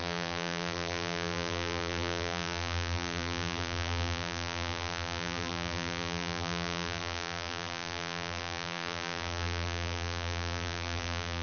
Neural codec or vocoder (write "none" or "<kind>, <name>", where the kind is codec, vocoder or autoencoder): vocoder, BigVGAN v2